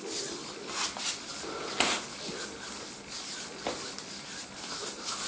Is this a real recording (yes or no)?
yes